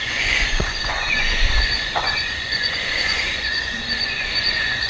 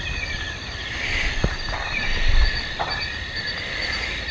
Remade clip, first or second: first